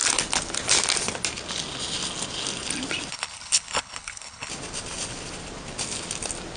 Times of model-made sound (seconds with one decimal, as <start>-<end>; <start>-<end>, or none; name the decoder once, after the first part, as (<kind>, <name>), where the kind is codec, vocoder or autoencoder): 3.1-4.5 (codec, HILCodec)